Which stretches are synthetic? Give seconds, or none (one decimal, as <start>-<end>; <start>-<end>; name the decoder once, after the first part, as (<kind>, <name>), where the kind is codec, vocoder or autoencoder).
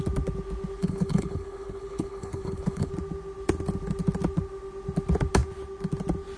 0.8-2.9 (codec, HILCodec)